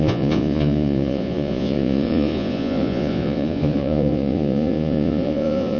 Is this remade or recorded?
remade